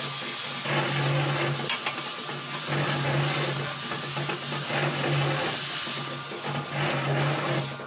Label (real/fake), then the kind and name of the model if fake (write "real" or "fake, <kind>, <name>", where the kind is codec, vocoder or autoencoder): real